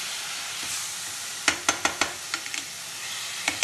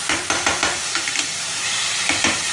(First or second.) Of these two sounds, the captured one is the first